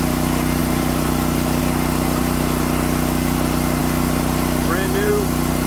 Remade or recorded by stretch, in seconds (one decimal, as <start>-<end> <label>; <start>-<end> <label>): 0.0-0.6 recorded; 0.6-1.6 remade; 1.6-5.7 recorded